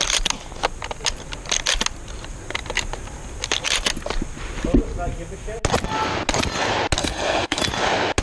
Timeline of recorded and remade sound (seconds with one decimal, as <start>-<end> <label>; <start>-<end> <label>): 0.0-7.0 recorded; 7.0-7.6 remade; 7.6-8.2 recorded